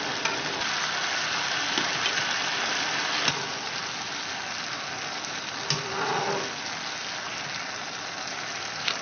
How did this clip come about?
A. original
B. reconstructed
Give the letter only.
A